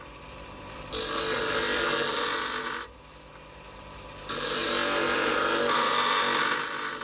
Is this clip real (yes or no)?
yes